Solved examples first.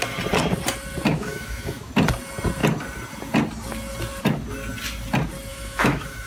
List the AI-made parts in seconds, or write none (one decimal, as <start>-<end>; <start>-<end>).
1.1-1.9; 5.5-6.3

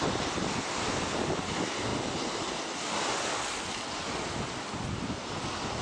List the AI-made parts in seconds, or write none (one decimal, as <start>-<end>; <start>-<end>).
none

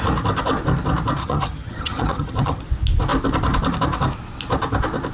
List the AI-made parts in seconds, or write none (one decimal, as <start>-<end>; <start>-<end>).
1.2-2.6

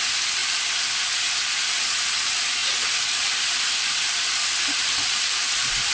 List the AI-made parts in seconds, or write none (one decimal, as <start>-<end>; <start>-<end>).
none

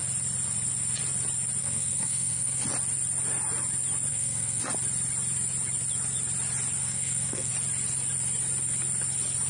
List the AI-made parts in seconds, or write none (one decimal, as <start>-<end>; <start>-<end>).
1.6-2.6; 4.1-4.6; 6.8-7.5

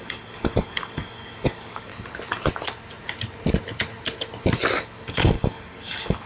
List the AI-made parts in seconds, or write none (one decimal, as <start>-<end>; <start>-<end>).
0.0-1.9; 5.1-6.3

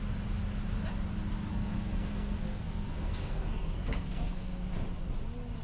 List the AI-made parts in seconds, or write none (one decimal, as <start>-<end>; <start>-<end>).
1.5-4.7